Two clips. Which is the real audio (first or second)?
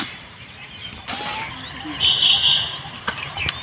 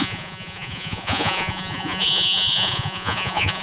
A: first